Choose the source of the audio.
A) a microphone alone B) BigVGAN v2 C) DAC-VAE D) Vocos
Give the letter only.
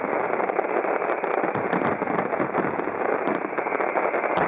A